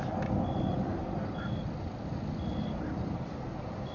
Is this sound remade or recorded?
recorded